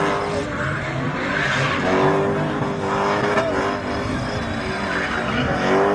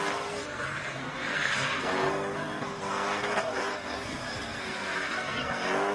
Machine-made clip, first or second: second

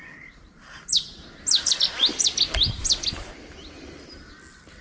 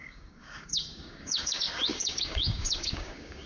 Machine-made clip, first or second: second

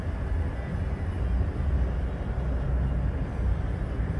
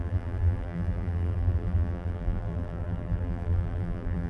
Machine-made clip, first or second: second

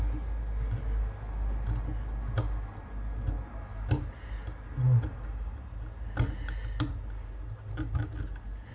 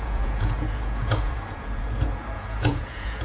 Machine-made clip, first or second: second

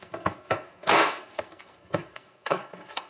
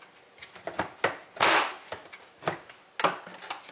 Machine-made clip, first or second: first